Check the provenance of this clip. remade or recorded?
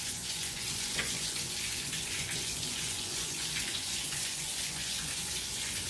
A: remade